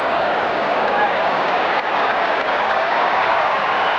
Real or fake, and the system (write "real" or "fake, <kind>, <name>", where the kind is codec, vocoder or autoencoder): fake, codec, DAC